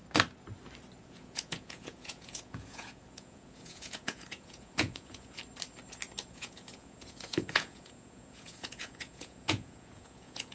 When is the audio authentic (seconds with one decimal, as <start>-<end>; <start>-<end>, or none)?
0.0-1.0; 5.4-6.3